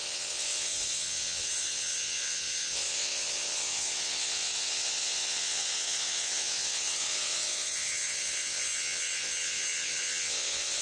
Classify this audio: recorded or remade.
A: remade